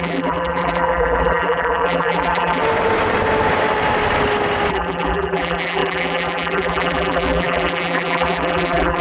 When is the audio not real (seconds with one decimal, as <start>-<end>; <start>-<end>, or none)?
0.0-2.6; 4.7-9.0